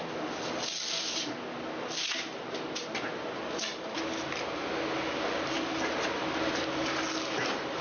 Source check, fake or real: real